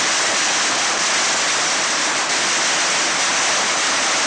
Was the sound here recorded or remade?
recorded